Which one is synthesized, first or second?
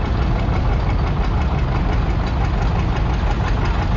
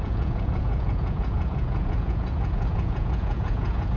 second